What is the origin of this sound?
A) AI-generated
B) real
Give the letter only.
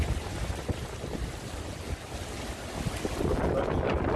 B